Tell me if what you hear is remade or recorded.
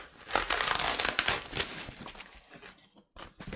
recorded